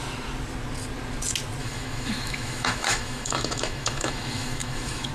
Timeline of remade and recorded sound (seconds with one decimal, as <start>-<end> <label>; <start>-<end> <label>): 0.0-1.6 recorded; 1.6-5.1 remade